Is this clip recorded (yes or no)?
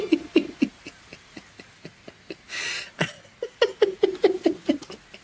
yes